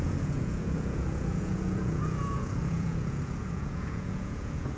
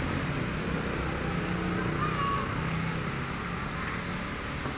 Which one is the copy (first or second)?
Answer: first